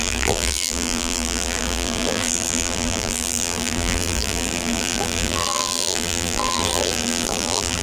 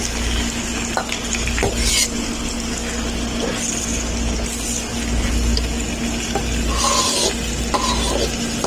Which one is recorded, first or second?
second